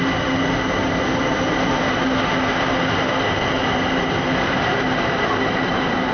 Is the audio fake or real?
real